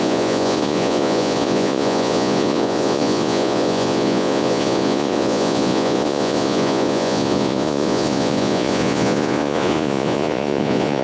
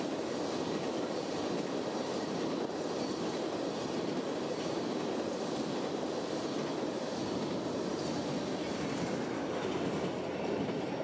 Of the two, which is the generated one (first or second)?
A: first